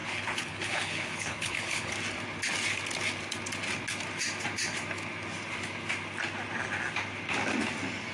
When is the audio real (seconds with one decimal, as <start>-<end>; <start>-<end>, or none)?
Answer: 1.9-8.1